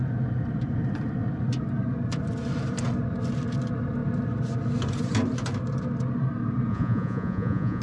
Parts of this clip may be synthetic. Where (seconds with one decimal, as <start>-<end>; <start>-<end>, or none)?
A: 6.7-7.8